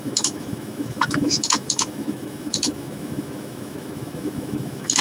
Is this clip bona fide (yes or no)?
no